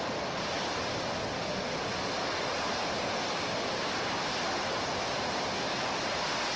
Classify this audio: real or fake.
fake